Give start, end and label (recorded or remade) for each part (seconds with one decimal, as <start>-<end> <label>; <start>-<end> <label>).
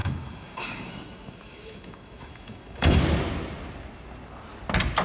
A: 0.0-3.0 remade; 3.0-5.0 recorded